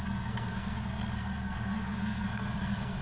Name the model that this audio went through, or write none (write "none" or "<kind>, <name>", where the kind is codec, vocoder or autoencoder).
codec, SNAC